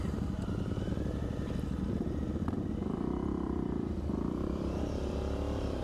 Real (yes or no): no